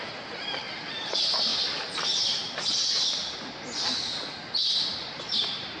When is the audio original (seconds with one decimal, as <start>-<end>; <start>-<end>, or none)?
1.5-5.0